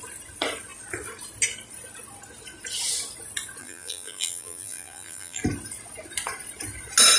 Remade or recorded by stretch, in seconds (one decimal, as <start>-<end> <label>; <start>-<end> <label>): 0.0-3.6 recorded; 3.6-5.4 remade; 5.4-7.2 recorded